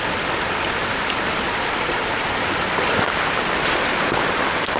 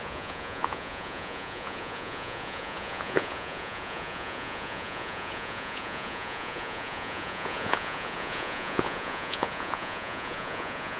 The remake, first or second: second